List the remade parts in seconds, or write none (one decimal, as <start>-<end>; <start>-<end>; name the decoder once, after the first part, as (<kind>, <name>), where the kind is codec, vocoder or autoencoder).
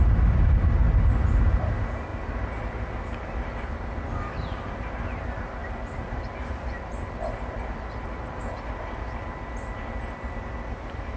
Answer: none